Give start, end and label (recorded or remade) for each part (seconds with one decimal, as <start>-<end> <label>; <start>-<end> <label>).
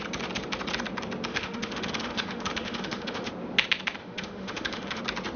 0.0-1.3 recorded; 1.3-3.3 remade; 3.3-4.0 recorded; 4.0-5.0 remade; 5.0-5.4 recorded